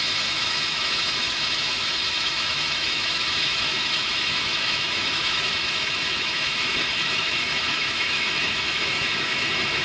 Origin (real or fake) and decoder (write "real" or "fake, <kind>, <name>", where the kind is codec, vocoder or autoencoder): fake, autoencoder, DAC-VAE